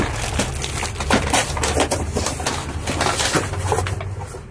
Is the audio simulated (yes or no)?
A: no